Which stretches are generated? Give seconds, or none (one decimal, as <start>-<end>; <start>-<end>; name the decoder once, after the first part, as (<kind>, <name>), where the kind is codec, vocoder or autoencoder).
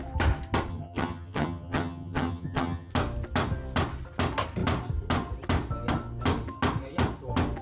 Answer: 0.7-2.9 (vocoder, HiFi-GAN)